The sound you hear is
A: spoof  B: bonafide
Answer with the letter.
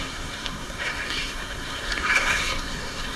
A